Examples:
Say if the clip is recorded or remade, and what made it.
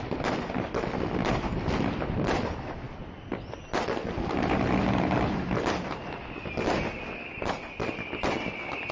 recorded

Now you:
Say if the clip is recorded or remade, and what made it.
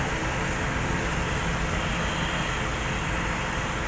recorded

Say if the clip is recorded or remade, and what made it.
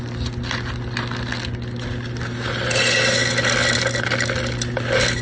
recorded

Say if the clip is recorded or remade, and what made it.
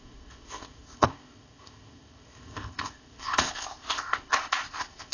remade, codec, ZipCodec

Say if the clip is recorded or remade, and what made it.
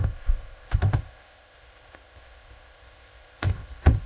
remade, codec, ZipCodec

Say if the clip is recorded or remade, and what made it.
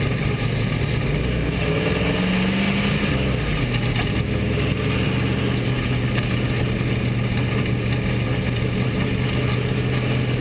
recorded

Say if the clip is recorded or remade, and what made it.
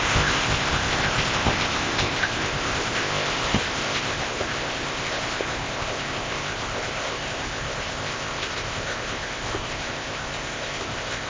remade, codec, ZipCodec